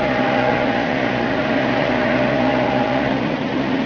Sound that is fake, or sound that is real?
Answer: fake